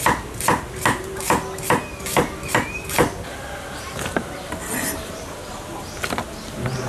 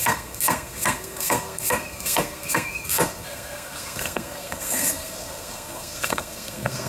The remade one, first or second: second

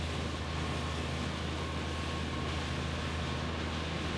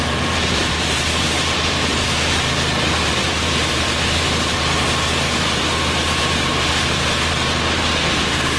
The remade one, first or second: second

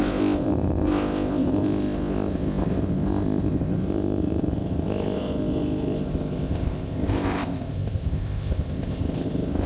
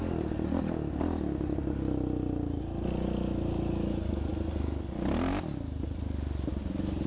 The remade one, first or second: first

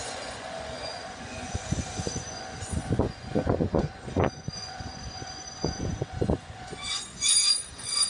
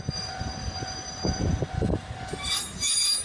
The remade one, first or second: first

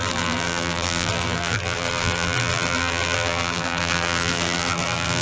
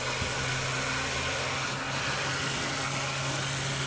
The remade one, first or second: first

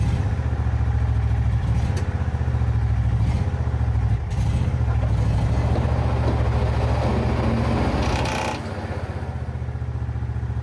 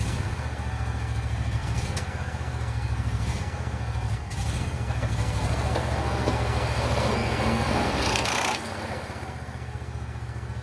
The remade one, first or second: second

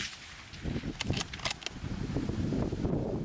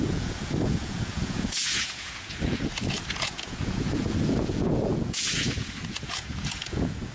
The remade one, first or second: second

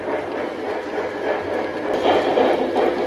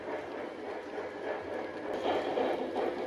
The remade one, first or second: second